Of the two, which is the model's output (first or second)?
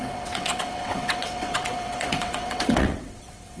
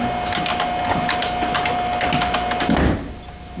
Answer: first